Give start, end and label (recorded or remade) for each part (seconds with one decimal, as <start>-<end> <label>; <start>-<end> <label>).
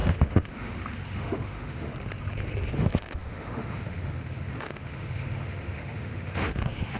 0.0-1.9 remade; 1.9-2.7 recorded; 2.7-7.0 remade